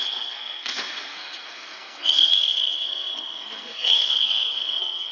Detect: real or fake fake